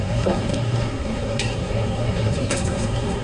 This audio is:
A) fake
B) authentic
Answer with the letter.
A